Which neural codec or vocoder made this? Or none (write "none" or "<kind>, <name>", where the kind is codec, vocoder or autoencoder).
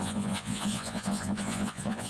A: vocoder, Vocos